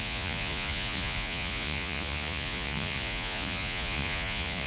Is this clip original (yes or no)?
no